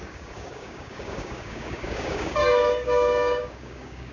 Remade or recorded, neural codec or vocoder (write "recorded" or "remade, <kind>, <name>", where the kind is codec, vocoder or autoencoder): remade, codec, DAC